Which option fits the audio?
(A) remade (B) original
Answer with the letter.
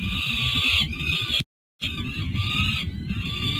B